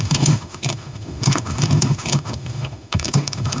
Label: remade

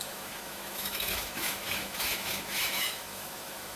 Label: remade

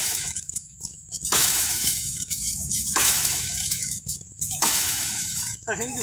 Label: remade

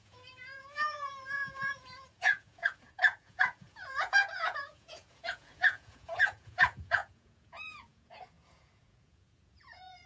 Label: remade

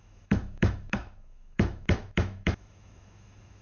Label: remade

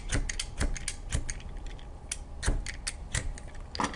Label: recorded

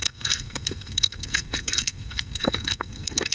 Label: remade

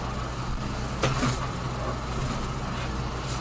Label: recorded